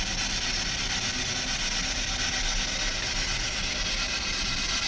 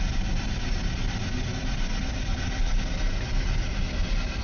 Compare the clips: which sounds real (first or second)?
first